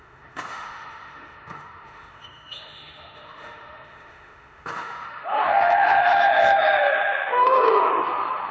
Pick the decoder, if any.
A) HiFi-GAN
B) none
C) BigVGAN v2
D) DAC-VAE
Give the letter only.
D